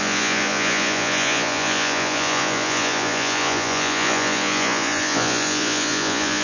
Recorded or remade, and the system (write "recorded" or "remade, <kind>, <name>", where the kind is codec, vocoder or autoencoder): remade, vocoder, Vocos